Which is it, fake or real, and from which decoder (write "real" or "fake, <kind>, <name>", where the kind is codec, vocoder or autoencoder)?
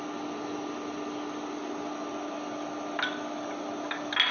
real